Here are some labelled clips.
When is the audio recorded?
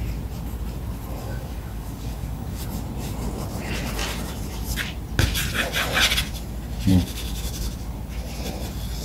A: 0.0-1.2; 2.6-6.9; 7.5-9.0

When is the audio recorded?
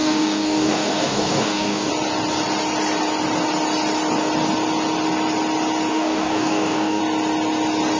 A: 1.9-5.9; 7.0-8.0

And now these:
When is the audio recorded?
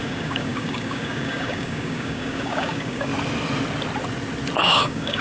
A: 3.1-4.6